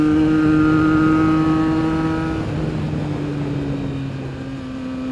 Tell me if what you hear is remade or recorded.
recorded